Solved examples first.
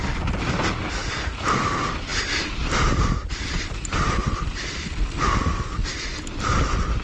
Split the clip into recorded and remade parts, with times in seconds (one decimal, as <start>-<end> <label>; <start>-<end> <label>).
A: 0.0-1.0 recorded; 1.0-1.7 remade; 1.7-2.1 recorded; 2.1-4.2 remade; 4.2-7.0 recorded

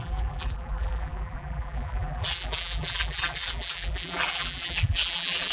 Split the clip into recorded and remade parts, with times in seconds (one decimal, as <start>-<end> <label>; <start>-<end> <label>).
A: 0.0-5.5 remade

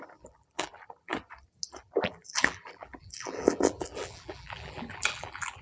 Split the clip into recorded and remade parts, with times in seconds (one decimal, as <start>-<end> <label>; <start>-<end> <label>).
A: 0.0-1.1 remade; 1.1-1.8 recorded; 1.8-5.6 remade

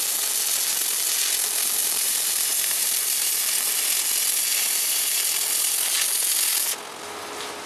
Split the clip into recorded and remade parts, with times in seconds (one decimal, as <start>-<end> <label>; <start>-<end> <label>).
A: 0.0-1.8 recorded; 1.8-3.3 remade; 3.3-4.5 recorded; 4.5-5.2 remade; 5.2-7.7 recorded

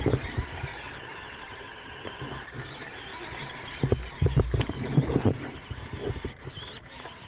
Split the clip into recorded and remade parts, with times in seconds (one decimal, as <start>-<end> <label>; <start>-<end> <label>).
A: 0.0-3.1 remade; 3.1-4.6 recorded; 4.6-5.8 remade; 5.8-6.8 recorded; 6.8-7.3 remade

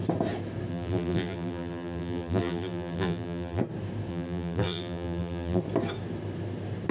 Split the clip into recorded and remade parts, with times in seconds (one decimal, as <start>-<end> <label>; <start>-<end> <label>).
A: 0.0-0.7 recorded; 0.7-3.6 remade; 3.6-4.1 recorded; 4.1-5.6 remade; 5.6-6.9 recorded

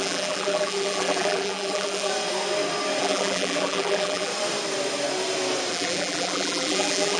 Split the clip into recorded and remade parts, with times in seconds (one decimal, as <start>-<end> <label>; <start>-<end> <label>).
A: 0.0-2.1 remade; 2.1-3.0 recorded; 3.0-4.3 remade; 4.3-5.7 recorded; 5.7-7.2 remade